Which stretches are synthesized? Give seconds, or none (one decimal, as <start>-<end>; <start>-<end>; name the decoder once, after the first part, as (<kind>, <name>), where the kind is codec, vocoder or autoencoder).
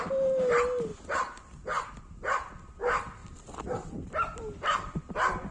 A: 3.2-4.1 (vocoder, BigVGAN v2)